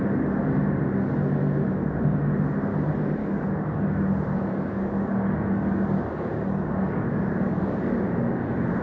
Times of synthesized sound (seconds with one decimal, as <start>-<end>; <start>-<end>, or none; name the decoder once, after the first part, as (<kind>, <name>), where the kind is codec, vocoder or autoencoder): 3.2-8.0 (codec, DAC)